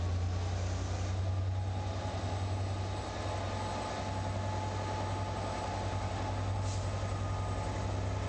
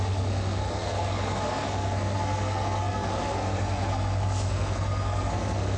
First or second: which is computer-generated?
second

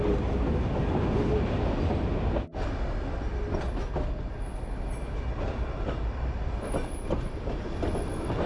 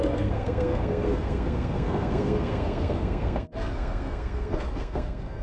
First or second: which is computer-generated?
second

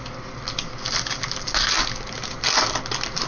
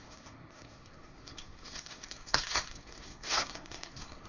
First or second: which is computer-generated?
second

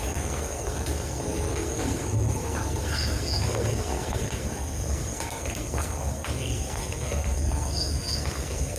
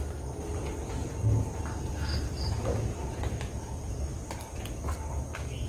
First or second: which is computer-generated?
first